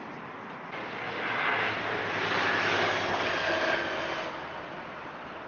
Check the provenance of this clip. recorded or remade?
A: recorded